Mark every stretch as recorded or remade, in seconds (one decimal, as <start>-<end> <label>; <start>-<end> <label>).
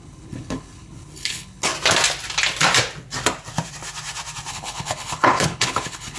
0.0-1.7 remade; 1.7-4.5 recorded; 4.5-6.2 remade